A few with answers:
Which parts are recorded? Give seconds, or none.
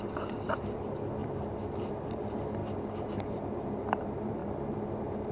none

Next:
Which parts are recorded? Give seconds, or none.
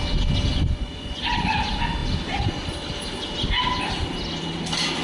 0.0-0.5; 1.2-5.0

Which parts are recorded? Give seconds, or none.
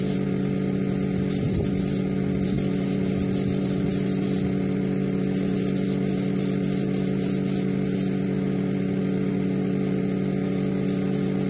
0.0-11.5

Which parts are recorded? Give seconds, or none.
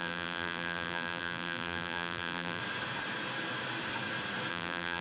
2.6-4.5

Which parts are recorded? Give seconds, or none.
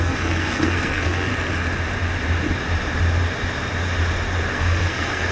1.3-4.5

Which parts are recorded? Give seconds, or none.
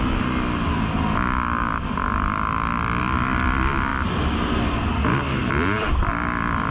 0.0-5.4; 6.1-6.7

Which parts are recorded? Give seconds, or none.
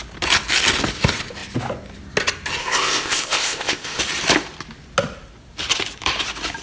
0.0-2.6; 4.0-6.6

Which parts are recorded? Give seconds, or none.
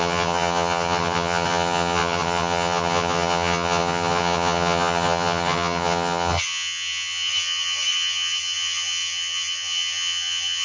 none